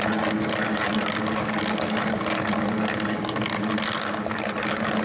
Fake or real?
real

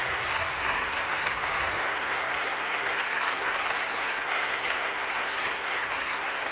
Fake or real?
fake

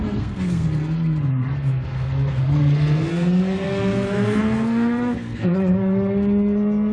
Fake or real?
fake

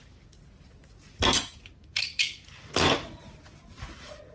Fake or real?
real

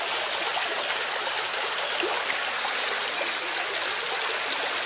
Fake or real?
real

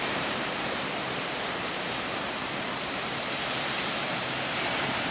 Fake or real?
fake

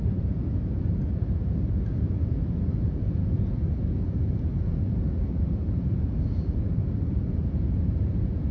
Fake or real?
fake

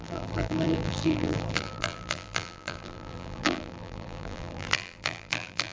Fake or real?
fake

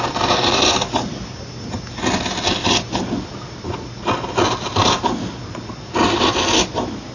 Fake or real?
real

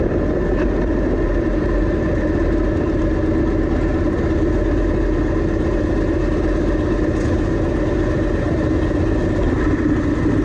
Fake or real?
real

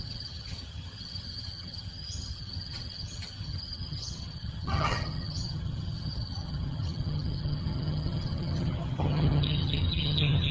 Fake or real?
fake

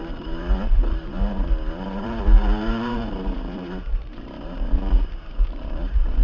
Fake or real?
fake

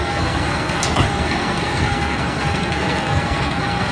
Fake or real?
fake